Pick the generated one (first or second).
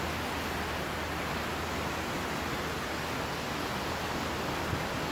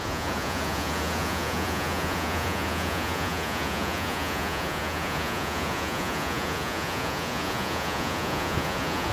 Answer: second